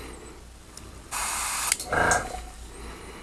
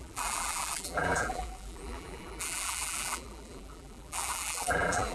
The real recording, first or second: first